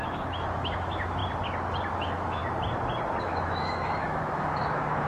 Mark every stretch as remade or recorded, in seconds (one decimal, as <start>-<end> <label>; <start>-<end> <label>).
0.0-1.2 remade; 1.2-1.9 recorded; 1.9-2.4 remade; 2.4-3.2 recorded; 3.2-5.1 remade